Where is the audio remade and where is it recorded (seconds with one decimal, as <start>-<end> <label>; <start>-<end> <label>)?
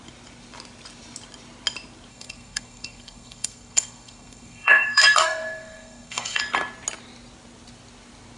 0.0-2.1 recorded; 2.1-6.4 remade; 6.4-8.4 recorded